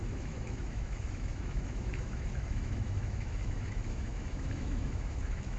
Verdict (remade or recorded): remade